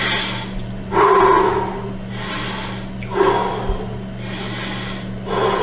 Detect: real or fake real